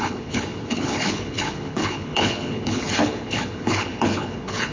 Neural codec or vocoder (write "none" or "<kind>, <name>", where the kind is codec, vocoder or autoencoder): codec, HILCodec